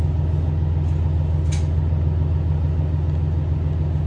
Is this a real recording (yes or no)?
yes